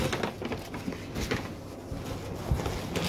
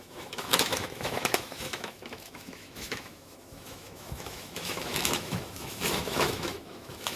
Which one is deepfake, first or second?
second